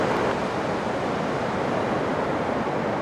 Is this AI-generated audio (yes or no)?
no